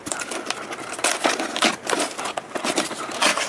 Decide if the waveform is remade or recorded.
recorded